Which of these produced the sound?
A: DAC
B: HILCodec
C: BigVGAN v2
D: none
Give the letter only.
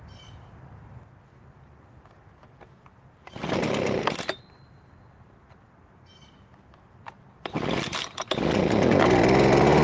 D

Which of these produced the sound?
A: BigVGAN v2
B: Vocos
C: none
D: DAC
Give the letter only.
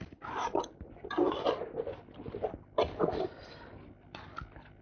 C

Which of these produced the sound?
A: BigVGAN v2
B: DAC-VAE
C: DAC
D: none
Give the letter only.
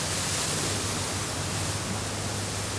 D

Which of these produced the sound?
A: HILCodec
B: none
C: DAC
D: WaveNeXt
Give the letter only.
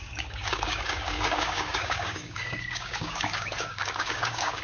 C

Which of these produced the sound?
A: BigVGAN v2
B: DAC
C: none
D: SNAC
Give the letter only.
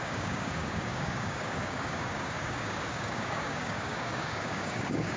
B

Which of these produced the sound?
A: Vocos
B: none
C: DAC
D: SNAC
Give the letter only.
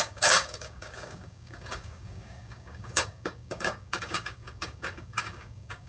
C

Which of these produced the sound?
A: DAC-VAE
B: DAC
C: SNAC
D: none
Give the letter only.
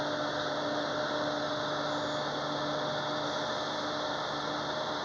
D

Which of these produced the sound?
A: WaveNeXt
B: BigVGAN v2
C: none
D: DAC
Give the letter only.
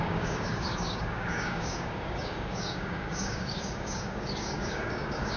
D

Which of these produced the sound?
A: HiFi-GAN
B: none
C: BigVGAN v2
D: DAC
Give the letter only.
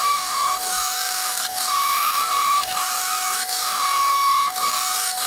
D